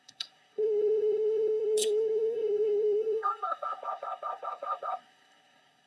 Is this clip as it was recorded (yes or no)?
no